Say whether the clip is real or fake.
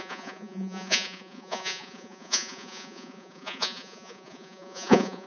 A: fake